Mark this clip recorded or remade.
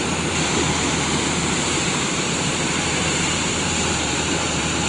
remade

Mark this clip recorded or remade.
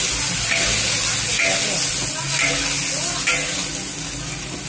recorded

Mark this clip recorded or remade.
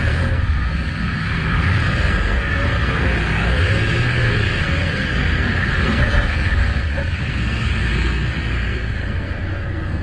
remade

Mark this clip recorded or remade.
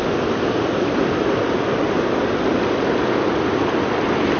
recorded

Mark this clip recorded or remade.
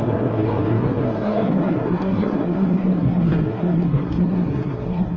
remade